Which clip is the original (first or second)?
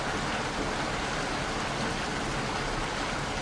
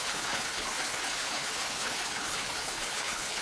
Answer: first